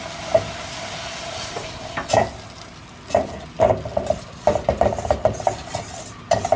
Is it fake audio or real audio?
real